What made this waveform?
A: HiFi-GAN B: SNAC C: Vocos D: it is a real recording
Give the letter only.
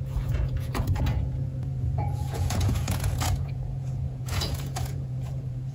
C